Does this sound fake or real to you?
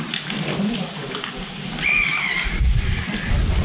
fake